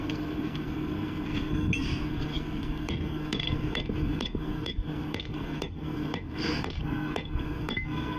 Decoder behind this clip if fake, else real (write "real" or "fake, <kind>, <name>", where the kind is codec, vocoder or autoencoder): fake, codec, SNAC